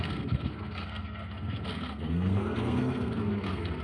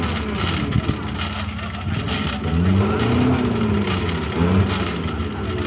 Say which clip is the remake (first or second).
first